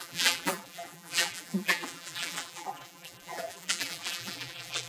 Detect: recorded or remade remade